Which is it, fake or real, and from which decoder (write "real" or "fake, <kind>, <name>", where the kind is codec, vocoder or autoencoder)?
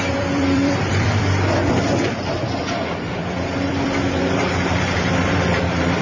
fake, vocoder, BigVGAN v2